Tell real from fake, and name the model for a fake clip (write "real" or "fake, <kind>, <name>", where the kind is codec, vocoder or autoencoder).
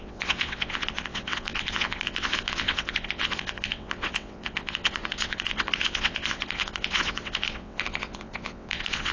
fake, vocoder, WaveNeXt